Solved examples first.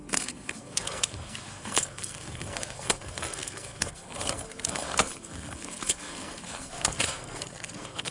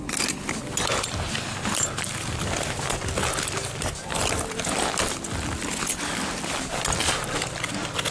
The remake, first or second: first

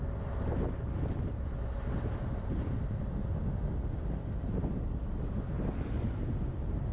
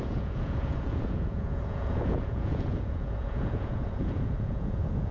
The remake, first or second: second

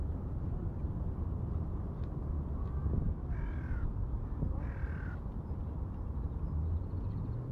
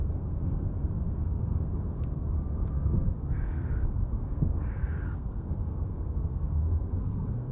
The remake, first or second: second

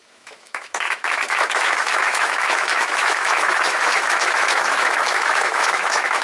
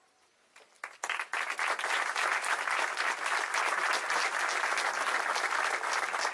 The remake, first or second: first